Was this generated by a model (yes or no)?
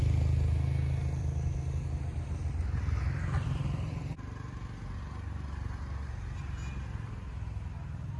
no